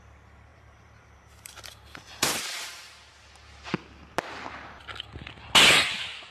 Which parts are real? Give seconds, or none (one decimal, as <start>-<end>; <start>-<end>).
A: 0.0-0.5; 3.1-6.3